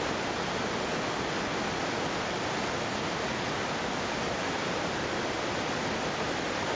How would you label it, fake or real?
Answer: real